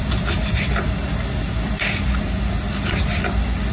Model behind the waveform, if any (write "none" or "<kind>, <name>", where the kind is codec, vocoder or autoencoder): none